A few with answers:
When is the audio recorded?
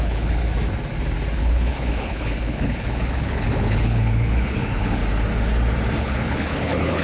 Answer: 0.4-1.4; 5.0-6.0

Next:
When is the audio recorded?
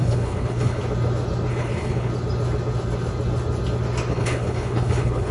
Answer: 0.8-1.5; 2.1-4.1